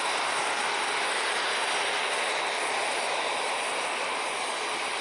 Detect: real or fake real